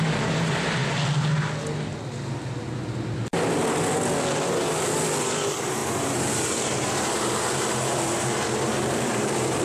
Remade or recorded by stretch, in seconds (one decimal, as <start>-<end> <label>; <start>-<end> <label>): 0.0-0.8 remade; 0.8-5.2 recorded; 5.2-9.6 remade